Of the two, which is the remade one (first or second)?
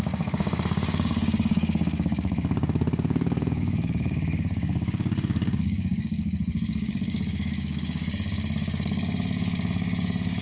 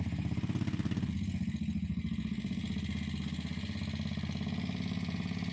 first